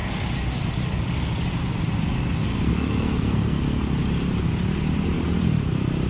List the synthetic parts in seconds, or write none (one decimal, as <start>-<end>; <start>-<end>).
2.5-3.8